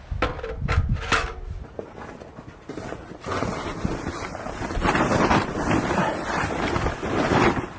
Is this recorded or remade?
recorded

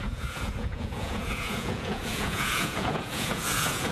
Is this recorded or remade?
remade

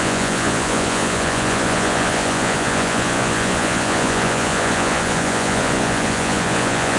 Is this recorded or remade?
remade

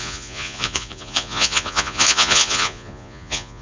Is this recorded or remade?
remade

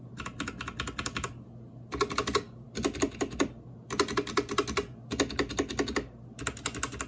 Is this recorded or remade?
recorded